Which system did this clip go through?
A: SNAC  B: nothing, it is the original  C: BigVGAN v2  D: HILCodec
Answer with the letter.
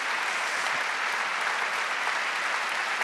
B